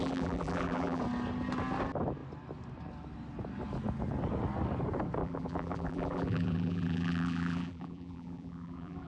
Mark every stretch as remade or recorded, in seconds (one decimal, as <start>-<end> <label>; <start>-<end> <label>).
0.0-1.0 remade; 1.0-5.2 recorded; 5.2-9.1 remade